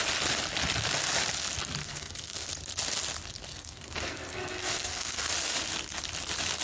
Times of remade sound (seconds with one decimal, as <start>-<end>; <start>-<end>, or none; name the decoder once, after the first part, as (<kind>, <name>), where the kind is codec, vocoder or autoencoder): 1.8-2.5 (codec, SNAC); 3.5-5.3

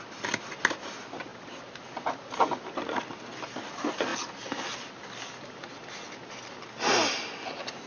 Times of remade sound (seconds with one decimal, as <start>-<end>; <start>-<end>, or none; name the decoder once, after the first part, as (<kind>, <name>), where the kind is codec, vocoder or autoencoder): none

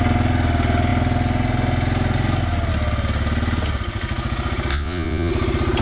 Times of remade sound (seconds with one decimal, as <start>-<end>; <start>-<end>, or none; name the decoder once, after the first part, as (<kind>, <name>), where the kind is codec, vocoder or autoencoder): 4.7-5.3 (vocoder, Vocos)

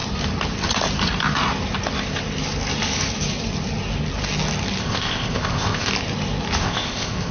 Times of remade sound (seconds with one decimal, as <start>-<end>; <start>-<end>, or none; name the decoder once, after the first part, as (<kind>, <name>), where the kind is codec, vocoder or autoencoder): 4.8-5.9 (codec, ZipCodec); 6.6-7.3

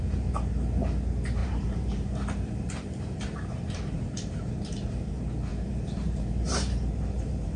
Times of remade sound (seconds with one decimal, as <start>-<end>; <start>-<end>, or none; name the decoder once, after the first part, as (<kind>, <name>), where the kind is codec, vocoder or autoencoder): 1.4-4.6 (vocoder, BigVGAN v2); 5.5-7.6

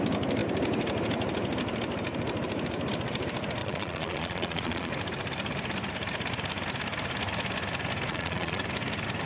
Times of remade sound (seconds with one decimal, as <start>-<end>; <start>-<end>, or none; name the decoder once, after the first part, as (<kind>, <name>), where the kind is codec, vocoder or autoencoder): 3.6-4.9 (vocoder, Vocos); 8.1-8.6

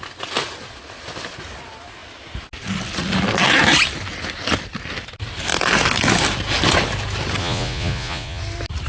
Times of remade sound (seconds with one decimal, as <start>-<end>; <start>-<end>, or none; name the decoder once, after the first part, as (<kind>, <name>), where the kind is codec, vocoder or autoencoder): 7.4-8.4 (vocoder, Vocos)

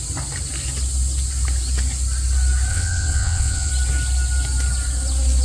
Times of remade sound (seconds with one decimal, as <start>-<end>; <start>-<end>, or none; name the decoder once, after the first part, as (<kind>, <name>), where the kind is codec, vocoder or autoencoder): 2.7-3.7 (vocoder, WaveNeXt)